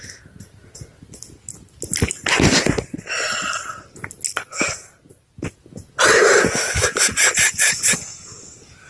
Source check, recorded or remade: recorded